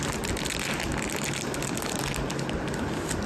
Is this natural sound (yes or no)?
yes